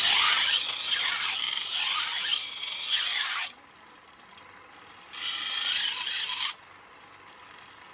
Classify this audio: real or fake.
real